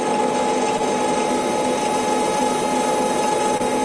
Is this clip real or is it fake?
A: real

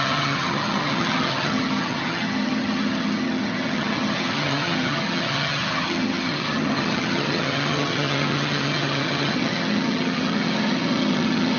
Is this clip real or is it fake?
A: fake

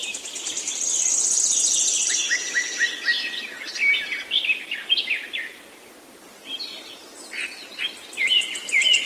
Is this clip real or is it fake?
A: real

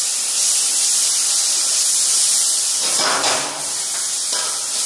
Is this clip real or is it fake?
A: real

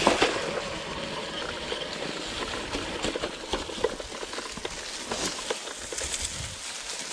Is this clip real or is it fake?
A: real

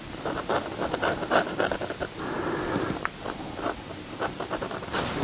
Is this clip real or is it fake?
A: real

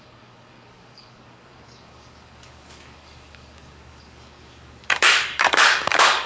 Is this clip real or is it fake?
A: fake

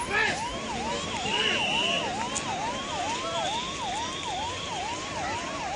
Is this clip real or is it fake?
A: real